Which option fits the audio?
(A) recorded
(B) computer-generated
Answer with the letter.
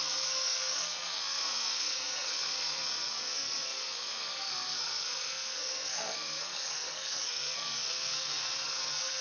B